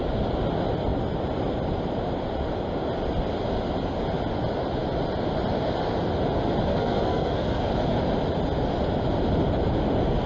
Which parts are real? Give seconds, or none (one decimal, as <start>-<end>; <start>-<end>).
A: 0.0-6.7; 7.7-10.3